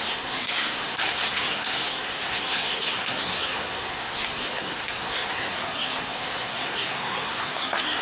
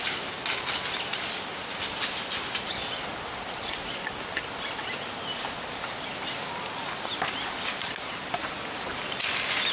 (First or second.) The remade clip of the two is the first